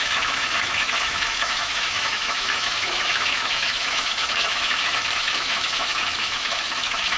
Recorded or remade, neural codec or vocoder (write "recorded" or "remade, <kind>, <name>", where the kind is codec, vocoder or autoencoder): remade, autoencoder, DAC-VAE